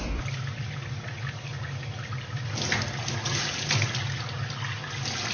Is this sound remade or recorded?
recorded